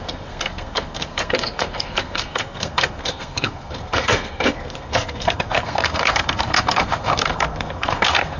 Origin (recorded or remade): remade